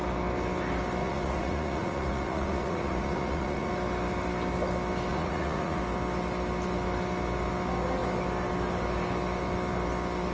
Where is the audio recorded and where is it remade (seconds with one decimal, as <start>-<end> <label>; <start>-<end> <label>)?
0.0-1.0 recorded; 1.0-3.7 remade; 3.7-5.1 recorded; 5.1-5.8 remade; 5.8-10.3 recorded